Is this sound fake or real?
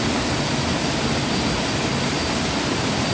real